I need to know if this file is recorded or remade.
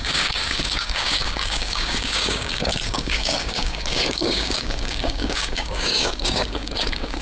remade